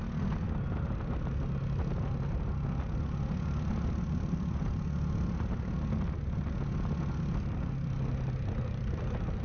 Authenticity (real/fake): real